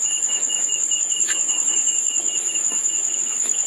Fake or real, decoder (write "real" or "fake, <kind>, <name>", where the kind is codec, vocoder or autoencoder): fake, autoencoder, DAC-VAE